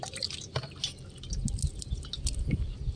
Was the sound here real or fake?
real